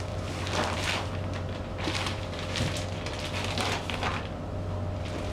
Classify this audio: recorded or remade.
remade